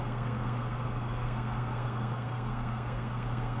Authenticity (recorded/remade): remade